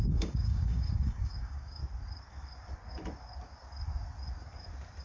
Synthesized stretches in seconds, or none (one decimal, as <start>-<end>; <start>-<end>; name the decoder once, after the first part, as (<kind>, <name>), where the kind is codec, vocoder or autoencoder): 0.0-1.8 (codec, DAC)